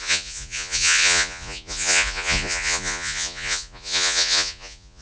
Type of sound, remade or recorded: remade